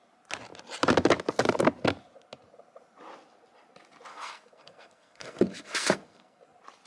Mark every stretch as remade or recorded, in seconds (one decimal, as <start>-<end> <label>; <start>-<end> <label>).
0.0-4.1 recorded; 4.1-6.4 remade; 6.4-6.9 recorded